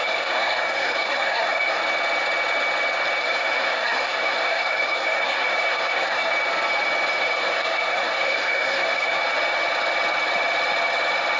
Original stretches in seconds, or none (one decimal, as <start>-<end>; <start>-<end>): 1.8-3.2; 6.3-7.2; 9.2-11.4